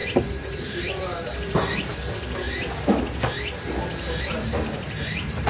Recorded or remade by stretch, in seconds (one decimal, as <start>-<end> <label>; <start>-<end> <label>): 0.0-1.0 remade; 1.0-4.3 recorded; 4.3-5.5 remade

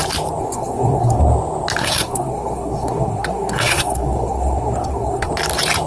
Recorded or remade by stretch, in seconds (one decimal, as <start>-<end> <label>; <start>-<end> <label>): 0.0-0.4 recorded; 0.4-1.2 remade; 1.2-1.8 recorded; 1.8-5.3 remade; 5.3-5.9 recorded

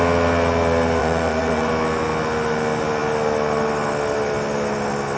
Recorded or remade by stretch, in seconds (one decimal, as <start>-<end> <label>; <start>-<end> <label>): 0.0-1.0 recorded; 1.0-1.7 remade; 1.7-5.2 recorded